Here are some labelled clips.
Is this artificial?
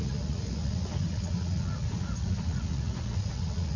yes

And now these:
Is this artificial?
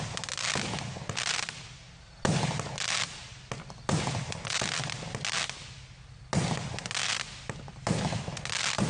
no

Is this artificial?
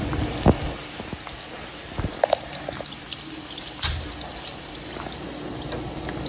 no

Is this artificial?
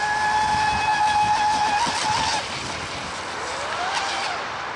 no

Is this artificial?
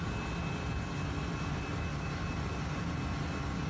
no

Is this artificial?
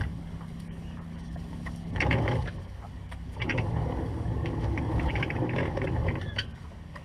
yes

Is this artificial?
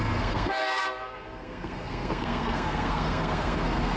yes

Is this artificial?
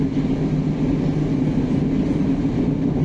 no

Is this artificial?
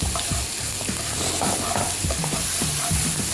no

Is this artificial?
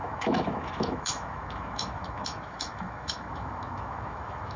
yes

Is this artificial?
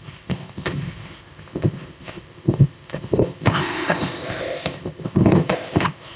yes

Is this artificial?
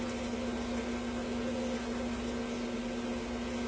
no